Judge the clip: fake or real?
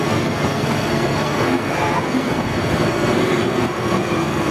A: fake